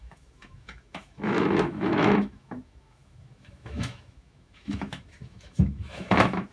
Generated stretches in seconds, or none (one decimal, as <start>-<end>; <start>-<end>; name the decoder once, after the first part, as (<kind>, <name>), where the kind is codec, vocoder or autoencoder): 0.0-6.5 (autoencoder, DAC-VAE)